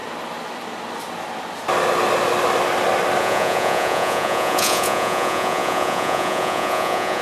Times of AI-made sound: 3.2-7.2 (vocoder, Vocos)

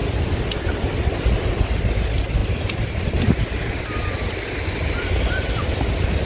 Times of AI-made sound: none

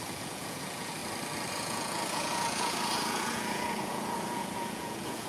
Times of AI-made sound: 0.0-1.0 (vocoder, Vocos); 1.5-5.3